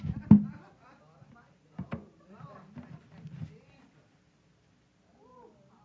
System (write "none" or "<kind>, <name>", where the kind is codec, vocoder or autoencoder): none